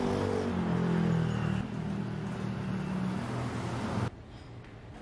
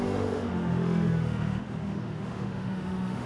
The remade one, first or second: second